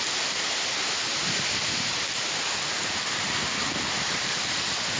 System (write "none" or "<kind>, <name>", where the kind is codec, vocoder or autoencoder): none